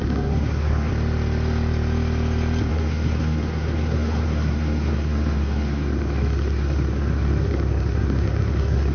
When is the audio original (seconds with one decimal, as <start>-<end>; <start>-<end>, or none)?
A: 0.9-2.7